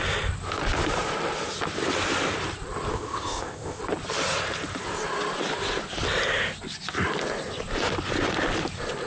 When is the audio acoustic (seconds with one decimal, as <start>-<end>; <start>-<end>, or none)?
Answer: 0.0-2.9; 3.8-9.1